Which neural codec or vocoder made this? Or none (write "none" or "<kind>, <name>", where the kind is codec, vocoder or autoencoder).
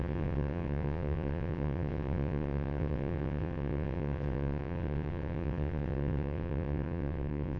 vocoder, WaveNeXt